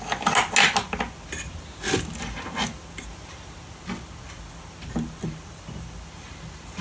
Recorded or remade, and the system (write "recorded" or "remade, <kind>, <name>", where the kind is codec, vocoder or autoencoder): recorded